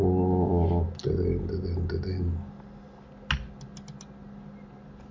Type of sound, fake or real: real